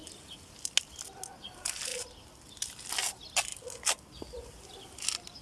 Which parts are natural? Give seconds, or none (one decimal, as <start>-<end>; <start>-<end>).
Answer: 0.0-5.4